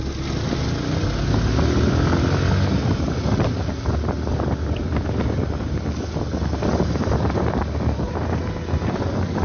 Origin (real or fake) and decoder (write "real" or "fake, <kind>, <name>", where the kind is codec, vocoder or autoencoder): real